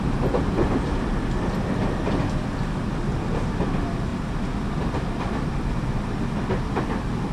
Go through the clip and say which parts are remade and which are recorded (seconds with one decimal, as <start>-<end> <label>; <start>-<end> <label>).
0.0-4.1 recorded; 4.1-6.0 remade; 6.0-7.3 recorded